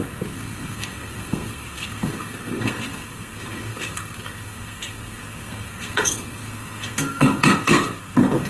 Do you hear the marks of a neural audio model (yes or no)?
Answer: yes